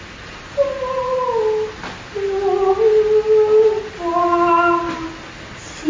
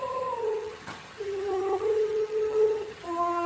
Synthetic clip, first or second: second